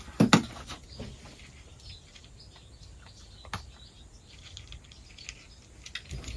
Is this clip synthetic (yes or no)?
no